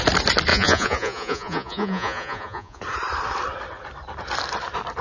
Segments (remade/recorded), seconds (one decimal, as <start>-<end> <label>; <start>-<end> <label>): 0.0-0.5 recorded; 0.5-2.8 remade; 2.8-5.0 recorded

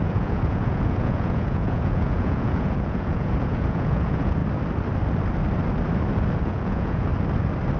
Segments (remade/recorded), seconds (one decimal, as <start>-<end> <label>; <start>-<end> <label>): 0.0-4.4 remade; 4.4-6.4 recorded; 6.4-7.1 remade; 7.1-7.8 recorded

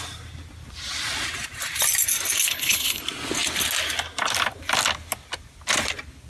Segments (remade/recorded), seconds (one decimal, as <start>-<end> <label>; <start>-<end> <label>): 0.0-2.4 recorded; 2.4-3.0 remade; 3.0-6.3 recorded

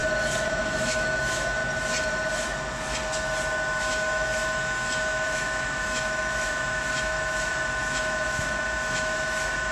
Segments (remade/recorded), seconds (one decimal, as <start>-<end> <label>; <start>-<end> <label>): 0.0-0.5 recorded; 0.5-1.6 remade; 1.6-3.8 recorded; 3.8-9.7 remade

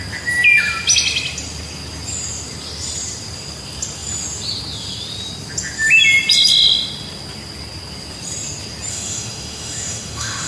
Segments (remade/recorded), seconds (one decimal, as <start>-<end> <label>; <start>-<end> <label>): 0.0-8.9 recorded; 8.9-10.5 remade

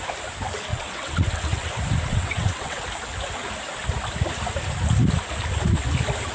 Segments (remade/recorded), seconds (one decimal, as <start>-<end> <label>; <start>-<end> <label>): 0.0-0.7 recorded; 0.7-1.7 remade; 1.7-2.1 recorded; 2.1-2.8 remade; 2.8-6.3 recorded